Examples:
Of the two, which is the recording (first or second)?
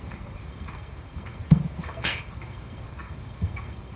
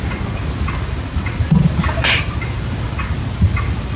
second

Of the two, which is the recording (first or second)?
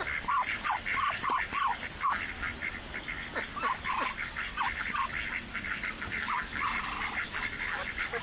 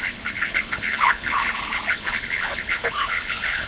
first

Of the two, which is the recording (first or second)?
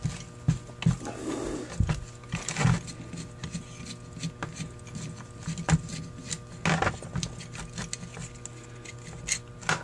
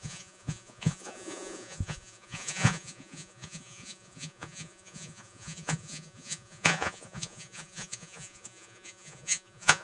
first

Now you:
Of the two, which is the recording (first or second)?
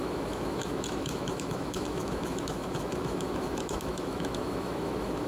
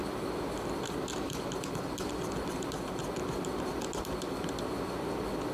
second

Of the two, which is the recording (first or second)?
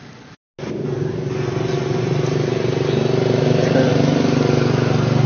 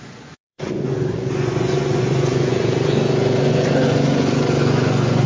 first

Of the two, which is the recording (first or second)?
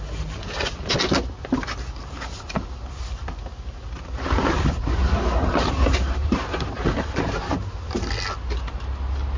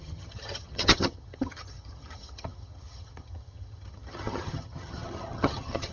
first